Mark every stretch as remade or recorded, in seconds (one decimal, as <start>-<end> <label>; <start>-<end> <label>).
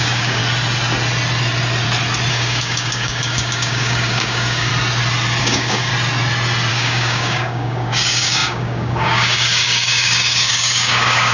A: 0.0-0.4 remade; 0.4-2.3 recorded; 2.3-4.7 remade; 4.7-5.4 recorded; 5.4-5.9 remade; 5.9-6.7 recorded; 6.7-11.3 remade